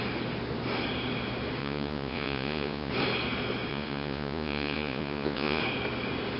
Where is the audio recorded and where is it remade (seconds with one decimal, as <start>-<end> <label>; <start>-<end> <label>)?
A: 0.0-1.6 recorded; 1.6-2.9 remade; 2.9-3.7 recorded; 3.7-5.6 remade; 5.6-6.4 recorded